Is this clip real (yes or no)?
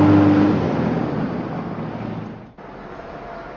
yes